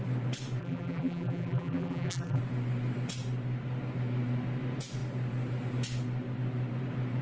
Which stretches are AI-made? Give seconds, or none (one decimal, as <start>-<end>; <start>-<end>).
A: 0.6-2.4